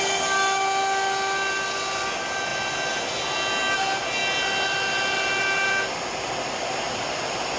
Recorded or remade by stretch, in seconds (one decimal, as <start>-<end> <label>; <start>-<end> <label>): 0.0-7.6 recorded